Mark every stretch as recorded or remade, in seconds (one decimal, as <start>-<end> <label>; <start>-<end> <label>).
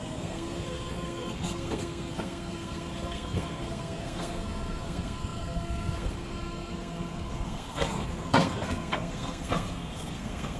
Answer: 0.0-10.6 remade